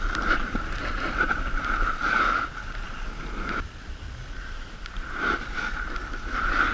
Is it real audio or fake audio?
real